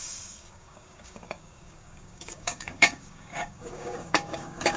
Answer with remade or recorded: remade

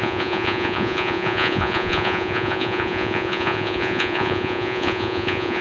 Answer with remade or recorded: remade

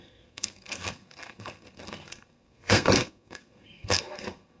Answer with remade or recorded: remade